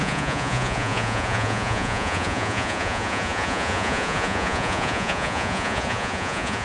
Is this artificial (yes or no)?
yes